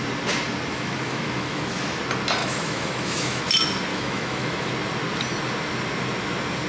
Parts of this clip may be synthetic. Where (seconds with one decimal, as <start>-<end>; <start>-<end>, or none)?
0.7-2.0; 2.4-3.4; 3.9-4.7